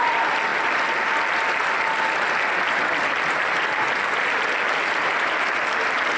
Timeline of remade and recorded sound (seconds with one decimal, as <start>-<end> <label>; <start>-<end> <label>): 0.0-6.2 recorded